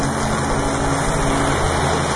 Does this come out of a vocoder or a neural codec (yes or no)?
no